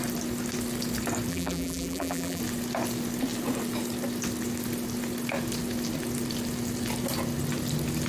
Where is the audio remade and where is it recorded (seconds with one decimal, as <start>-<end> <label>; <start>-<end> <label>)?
0.0-1.3 recorded; 1.3-2.4 remade; 2.4-8.1 recorded